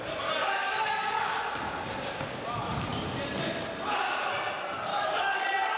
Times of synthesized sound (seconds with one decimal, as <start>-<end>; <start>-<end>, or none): 0.4-1.4; 4.9-5.8